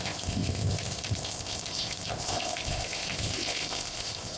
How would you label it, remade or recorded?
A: remade